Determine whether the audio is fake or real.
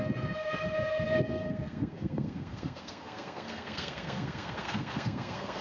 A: fake